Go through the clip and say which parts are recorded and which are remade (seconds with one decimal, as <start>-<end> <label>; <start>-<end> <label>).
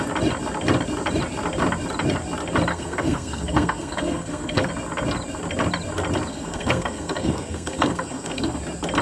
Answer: 0.0-2.7 recorded; 2.7-4.7 remade; 4.7-6.3 recorded; 6.3-8.6 remade; 8.6-9.0 recorded